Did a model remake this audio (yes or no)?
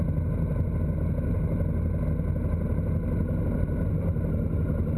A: no